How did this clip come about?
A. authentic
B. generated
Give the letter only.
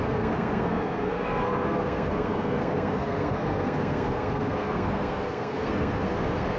B